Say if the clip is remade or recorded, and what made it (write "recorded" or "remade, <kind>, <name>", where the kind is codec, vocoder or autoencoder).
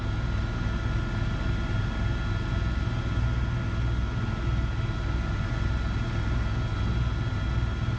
recorded